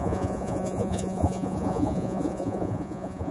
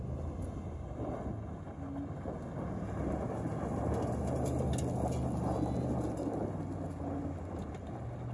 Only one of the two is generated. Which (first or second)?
first